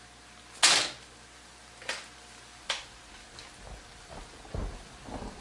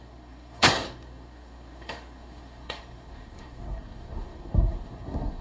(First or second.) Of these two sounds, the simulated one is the second